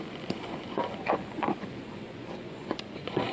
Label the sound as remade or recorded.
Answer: remade